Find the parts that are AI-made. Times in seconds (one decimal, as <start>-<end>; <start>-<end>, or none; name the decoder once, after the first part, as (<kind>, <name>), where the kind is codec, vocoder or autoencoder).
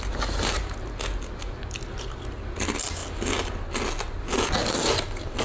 none